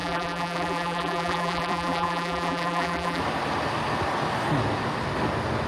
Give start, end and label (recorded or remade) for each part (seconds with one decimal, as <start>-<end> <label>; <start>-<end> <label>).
0.0-3.2 remade; 3.2-5.7 recorded